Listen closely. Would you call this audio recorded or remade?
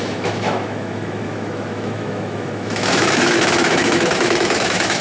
remade